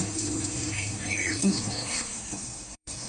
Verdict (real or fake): fake